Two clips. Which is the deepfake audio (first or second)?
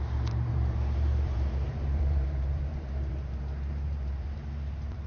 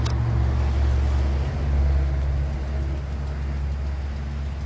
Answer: first